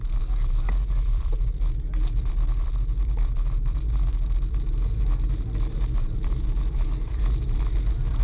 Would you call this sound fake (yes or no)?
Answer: yes